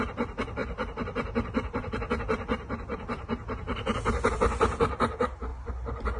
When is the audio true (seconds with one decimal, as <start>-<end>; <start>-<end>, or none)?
0.0-5.5